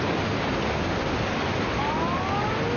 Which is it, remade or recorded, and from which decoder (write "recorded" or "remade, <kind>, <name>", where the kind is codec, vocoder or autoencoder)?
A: recorded